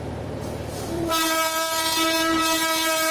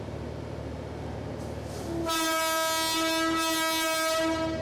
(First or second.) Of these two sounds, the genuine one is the second